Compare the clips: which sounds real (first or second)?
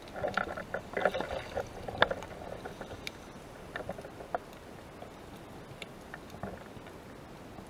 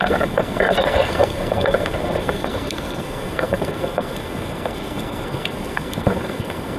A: first